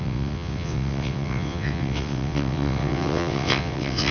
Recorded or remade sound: remade